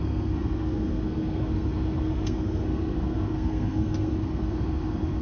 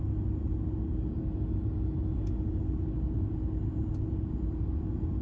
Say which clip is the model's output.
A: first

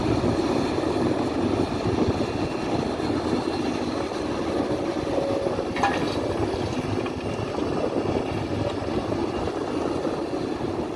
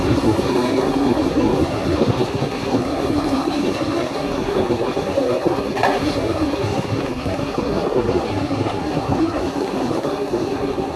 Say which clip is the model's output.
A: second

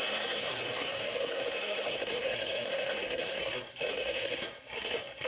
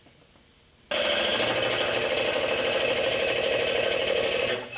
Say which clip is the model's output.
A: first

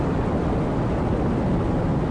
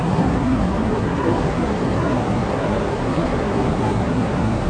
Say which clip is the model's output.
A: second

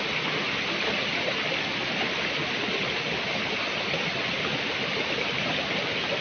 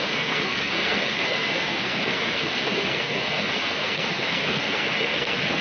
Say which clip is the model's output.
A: second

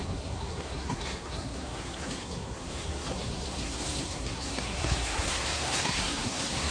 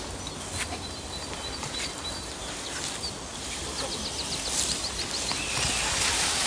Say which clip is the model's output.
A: first